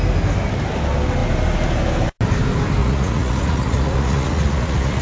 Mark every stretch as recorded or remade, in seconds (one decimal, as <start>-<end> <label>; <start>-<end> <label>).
0.0-2.8 recorded; 2.8-5.0 remade